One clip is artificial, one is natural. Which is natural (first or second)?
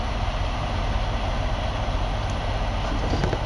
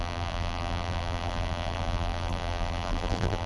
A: first